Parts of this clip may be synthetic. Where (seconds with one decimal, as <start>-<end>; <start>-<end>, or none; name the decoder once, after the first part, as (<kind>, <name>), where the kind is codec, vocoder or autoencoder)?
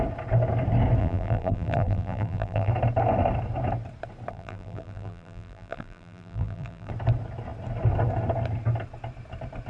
1.0-2.7 (vocoder, BigVGAN v2); 4.3-6.9